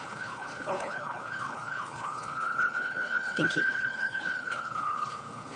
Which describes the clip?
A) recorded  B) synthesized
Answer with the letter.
B